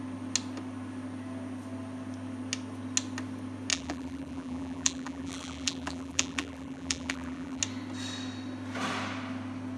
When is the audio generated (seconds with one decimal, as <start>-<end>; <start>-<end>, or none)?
3.7-7.6